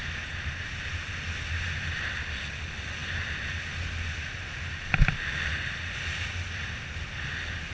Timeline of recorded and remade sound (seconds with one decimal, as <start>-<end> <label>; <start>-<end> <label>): 0.0-7.7 recorded